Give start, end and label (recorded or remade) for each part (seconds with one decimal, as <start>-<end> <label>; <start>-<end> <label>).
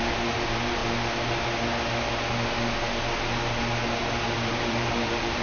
0.0-0.8 remade; 0.8-4.0 recorded; 4.0-5.4 remade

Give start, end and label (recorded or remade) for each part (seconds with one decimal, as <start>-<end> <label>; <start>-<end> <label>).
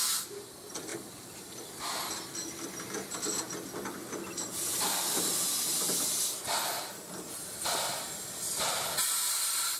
0.0-0.9 recorded; 0.9-1.7 remade; 1.7-9.8 recorded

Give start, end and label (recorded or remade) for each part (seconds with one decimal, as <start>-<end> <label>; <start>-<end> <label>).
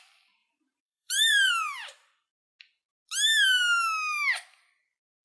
0.0-0.4 recorded; 0.4-1.5 remade; 1.5-5.2 recorded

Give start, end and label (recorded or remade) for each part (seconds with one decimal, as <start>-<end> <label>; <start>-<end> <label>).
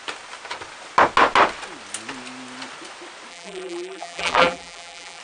0.0-3.3 recorded; 3.3-5.2 remade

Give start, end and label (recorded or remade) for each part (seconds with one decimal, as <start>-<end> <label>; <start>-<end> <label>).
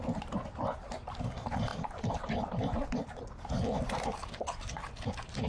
0.0-5.5 recorded